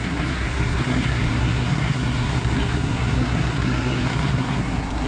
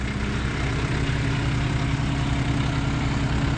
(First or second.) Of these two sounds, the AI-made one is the first